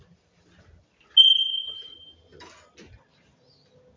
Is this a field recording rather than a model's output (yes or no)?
yes